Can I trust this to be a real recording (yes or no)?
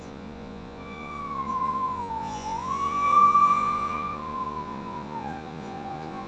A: no